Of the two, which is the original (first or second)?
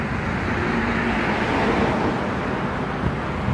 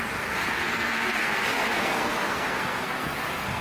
first